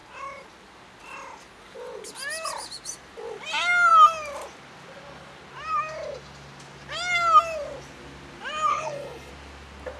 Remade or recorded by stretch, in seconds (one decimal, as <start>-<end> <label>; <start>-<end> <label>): 0.0-8.7 recorded; 8.7-9.3 remade; 9.3-10.0 recorded